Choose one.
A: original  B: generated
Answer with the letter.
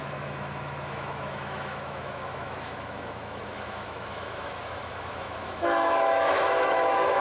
B